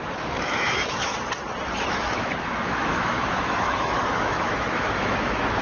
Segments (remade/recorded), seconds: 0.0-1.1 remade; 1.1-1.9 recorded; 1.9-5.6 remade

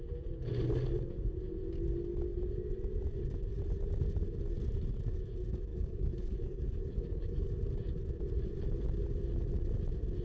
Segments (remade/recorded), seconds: 0.0-5.7 recorded; 5.7-7.5 remade; 7.5-10.2 recorded

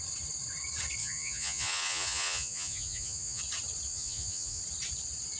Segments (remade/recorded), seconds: 0.0-1.0 recorded; 1.0-3.4 remade; 3.4-3.9 recorded; 3.9-4.6 remade; 4.6-5.4 recorded